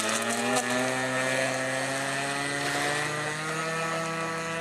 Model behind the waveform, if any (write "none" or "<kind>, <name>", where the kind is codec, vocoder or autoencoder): none